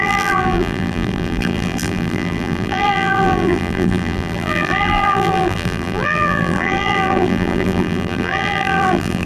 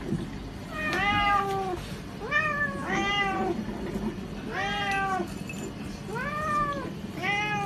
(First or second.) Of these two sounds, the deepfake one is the first